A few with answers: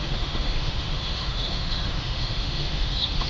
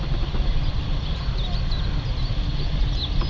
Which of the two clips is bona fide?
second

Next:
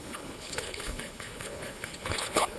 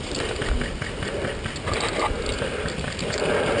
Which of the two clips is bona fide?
second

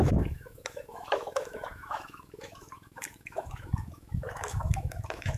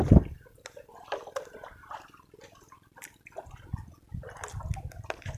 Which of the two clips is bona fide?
second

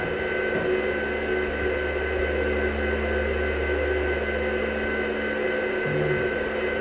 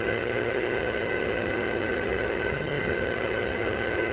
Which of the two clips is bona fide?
first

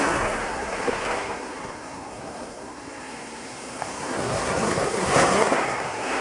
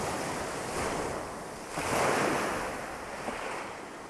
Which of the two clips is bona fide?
second